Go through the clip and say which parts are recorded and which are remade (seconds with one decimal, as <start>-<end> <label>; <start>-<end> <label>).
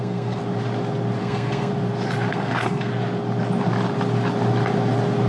0.0-0.4 remade; 0.4-1.2 recorded; 1.2-1.7 remade; 1.7-2.3 recorded; 2.3-2.9 remade; 2.9-5.3 recorded